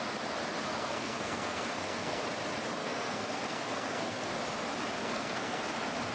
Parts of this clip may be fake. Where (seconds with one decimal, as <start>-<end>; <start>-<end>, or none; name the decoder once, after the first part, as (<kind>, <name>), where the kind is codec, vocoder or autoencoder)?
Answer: 0.7-2.2 (codec, SNAC); 2.8-4.3; 5.0-5.6